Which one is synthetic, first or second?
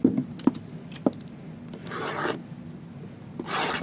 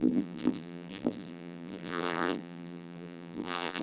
second